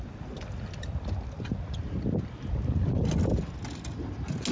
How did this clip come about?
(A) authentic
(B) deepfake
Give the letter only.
A